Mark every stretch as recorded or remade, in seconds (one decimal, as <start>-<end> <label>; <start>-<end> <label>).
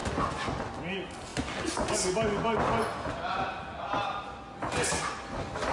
0.0-5.7 recorded